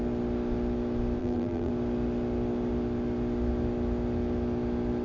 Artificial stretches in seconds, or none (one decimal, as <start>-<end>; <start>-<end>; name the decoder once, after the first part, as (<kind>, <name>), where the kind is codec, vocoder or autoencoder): 1.2-1.7 (vocoder, BigVGAN v2)